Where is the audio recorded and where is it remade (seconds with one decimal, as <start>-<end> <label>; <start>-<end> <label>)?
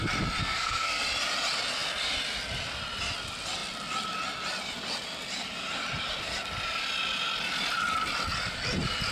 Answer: 0.0-0.4 recorded; 0.4-1.0 remade; 1.0-9.1 recorded